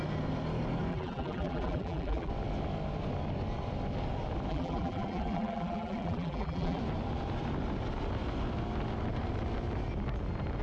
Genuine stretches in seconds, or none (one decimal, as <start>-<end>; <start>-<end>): 0.0-0.9; 2.3-4.5; 6.8-10.6